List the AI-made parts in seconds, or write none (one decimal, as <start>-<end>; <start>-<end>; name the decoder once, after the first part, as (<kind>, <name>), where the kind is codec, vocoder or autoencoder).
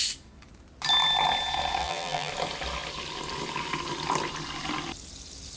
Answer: 1.8-2.3 (vocoder, BigVGAN v2)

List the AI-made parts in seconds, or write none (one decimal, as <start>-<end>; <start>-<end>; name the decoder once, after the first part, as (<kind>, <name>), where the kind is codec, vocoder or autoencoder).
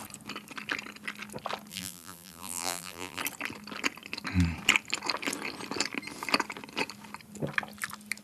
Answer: 1.7-3.2 (vocoder, BigVGAN v2)